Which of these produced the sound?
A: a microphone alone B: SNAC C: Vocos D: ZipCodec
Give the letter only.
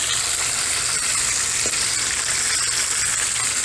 A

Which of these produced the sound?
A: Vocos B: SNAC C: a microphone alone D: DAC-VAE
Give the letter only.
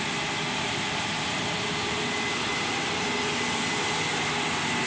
C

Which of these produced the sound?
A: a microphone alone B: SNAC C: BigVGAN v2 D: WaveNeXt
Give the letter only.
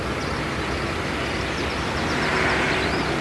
A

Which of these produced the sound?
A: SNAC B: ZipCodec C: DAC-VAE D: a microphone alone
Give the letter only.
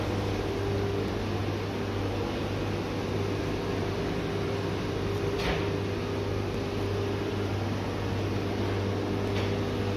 D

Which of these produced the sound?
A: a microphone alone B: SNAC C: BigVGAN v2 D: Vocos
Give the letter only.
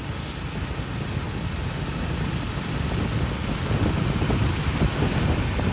A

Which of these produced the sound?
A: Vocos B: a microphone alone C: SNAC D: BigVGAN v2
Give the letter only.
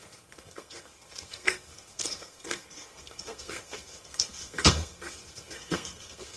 C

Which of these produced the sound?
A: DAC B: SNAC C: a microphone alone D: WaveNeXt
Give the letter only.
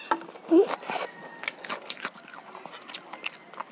C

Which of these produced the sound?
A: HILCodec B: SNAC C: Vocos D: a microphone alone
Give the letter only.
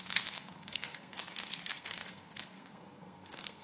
B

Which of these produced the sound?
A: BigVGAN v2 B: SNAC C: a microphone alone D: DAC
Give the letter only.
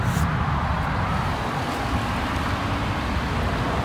C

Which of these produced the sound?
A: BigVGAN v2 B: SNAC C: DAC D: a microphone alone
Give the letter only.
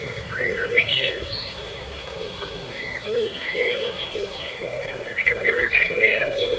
B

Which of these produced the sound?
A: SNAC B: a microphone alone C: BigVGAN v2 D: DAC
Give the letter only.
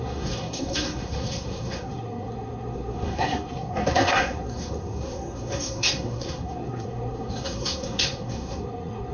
A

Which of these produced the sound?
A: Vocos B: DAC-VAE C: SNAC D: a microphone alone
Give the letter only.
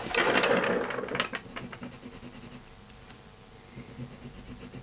D